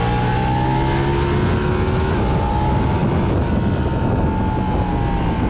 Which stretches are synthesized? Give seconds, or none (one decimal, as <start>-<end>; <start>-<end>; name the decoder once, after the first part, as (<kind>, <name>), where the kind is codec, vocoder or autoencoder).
none